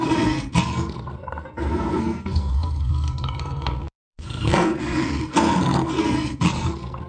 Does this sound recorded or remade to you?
remade